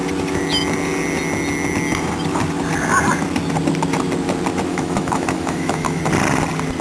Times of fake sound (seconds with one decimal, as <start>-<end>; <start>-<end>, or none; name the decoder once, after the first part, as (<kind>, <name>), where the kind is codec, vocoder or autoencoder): 4.7-6.0 (autoencoder, DAC-VAE)